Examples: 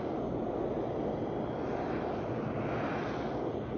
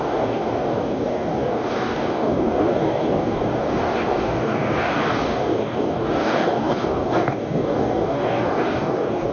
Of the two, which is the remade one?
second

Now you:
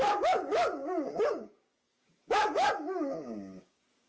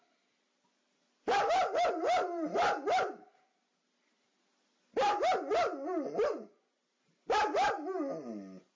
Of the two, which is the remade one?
first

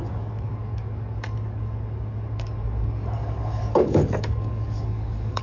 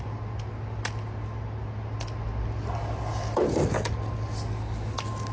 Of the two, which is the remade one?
first